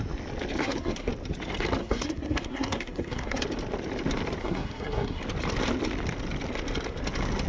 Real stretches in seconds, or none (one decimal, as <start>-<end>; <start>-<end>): 0.0-0.6; 1.1-1.8; 3.4-4.4; 5.2-7.5